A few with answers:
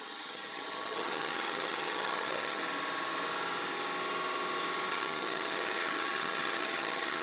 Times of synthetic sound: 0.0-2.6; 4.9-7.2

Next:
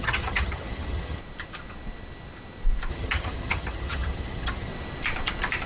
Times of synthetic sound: 0.0-1.2; 2.9-4.7

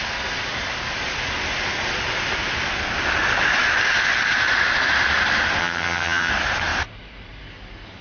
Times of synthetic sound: 5.6-6.3

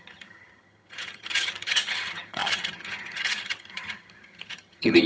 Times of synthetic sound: 0.0-5.1

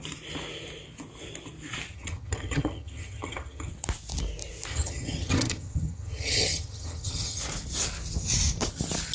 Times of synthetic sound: 1.9-3.7; 4.7-7.4

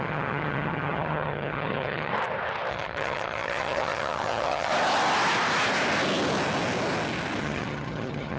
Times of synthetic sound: 0.0-2.1; 2.7-4.7; 7.4-8.4